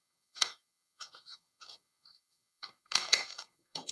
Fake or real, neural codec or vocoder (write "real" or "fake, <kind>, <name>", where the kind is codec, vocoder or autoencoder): fake, codec, DAC